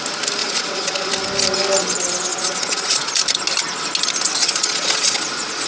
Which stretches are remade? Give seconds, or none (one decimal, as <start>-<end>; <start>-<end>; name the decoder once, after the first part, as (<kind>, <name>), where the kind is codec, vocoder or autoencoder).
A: 0.4-1.1 (vocoder, Vocos); 2.3-3.1; 4.4-5.7